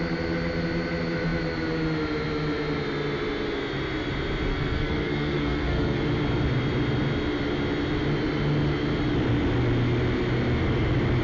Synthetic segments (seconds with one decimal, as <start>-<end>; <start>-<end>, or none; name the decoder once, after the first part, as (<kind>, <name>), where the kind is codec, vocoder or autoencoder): 4.5-6.0 (codec, SNAC)